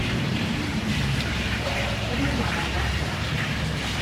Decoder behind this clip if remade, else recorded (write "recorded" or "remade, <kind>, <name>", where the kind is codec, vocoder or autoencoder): remade, vocoder, BigVGAN v2